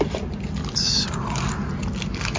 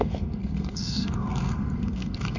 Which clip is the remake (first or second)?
second